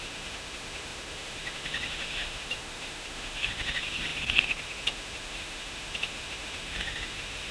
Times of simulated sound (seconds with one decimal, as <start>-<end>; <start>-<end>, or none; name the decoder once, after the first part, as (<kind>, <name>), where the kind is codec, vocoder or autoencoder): 0.0-7.5 (autoencoder, DAC-VAE)